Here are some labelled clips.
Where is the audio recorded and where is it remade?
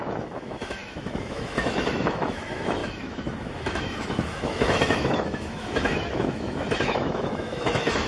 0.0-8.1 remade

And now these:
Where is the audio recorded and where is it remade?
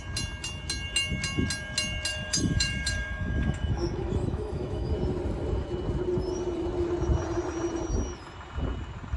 0.0-2.1 recorded; 2.1-4.9 remade; 4.9-9.2 recorded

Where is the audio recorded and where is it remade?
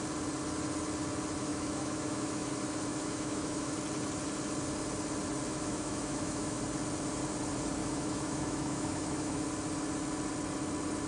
0.0-1.5 recorded; 1.5-2.5 remade; 2.5-2.9 recorded; 2.9-3.7 remade; 3.7-5.5 recorded; 5.5-6.6 remade; 6.6-7.8 recorded; 7.8-9.4 remade; 9.4-11.1 recorded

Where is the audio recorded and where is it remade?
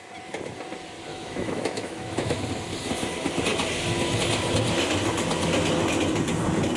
0.0-1.1 recorded; 1.1-2.4 remade; 2.4-6.8 recorded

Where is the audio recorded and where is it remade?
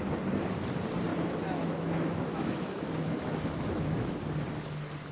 0.0-1.1 recorded; 1.1-4.2 remade; 4.2-5.1 recorded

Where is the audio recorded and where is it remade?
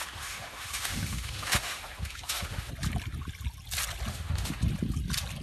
0.0-2.7 remade; 2.7-4.1 recorded; 4.1-4.6 remade; 4.6-5.4 recorded